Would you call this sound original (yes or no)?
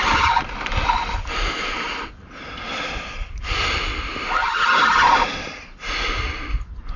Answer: yes